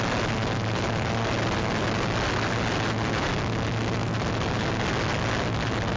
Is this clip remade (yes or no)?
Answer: no